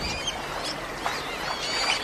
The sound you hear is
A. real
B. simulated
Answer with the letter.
A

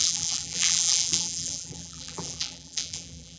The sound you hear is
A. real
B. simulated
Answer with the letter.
B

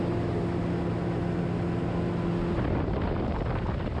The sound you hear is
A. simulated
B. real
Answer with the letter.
B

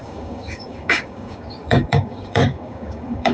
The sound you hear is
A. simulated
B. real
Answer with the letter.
A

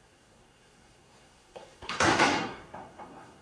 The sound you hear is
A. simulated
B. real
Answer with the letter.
A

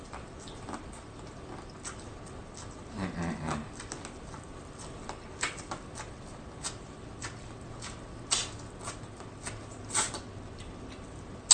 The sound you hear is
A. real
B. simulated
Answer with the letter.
A